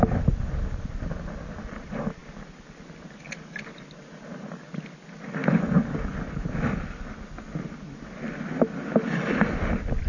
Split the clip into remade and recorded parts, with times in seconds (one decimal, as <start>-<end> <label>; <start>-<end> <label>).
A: 0.0-10.1 recorded